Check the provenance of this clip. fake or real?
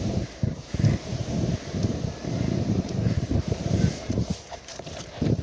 fake